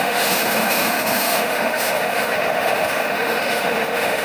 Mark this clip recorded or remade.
remade